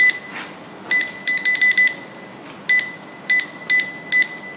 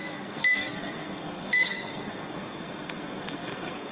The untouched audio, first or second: first